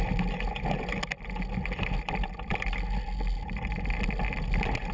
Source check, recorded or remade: recorded